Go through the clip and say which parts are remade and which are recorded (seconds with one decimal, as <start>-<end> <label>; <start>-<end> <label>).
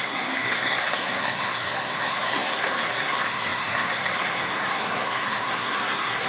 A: 0.0-6.3 remade